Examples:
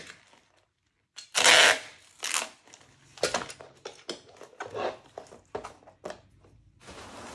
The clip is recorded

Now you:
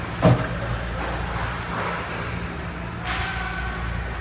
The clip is recorded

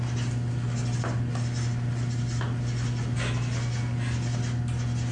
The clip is recorded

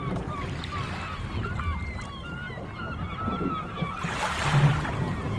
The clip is recorded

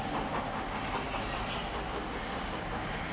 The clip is recorded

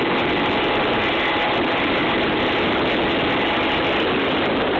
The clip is recorded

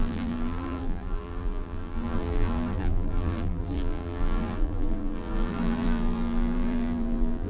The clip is remade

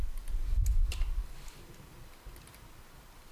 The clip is recorded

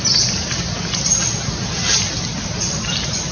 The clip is recorded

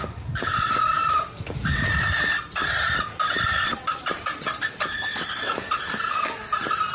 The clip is recorded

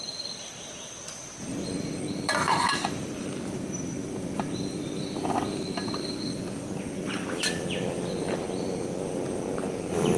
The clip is recorded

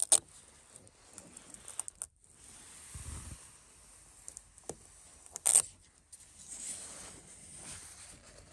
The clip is recorded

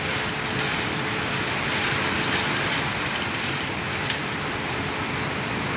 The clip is recorded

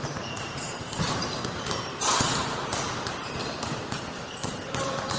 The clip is remade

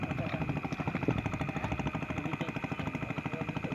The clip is remade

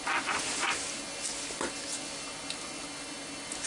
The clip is recorded